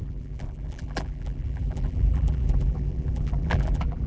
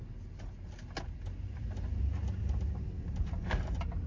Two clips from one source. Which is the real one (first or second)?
second